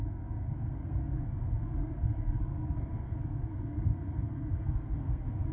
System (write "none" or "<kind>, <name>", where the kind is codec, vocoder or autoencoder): codec, SNAC